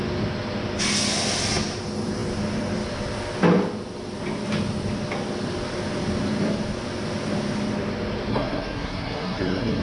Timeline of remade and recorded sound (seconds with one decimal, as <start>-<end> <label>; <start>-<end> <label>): 0.0-8.3 recorded; 8.3-9.8 remade